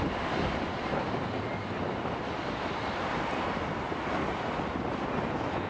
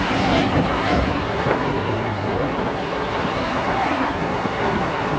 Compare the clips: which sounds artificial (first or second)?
second